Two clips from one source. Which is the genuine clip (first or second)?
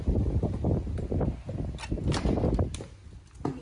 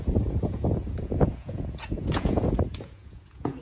first